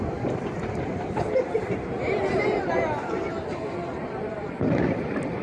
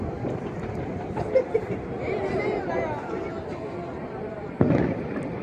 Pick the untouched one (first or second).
second